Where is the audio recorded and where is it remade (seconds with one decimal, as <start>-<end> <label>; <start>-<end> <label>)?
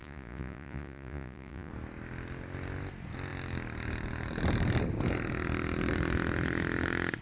0.0-1.7 remade; 1.7-7.2 recorded